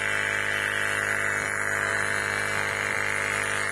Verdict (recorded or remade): recorded